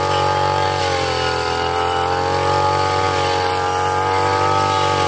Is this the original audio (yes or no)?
yes